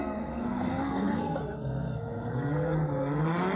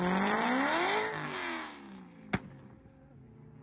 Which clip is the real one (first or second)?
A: second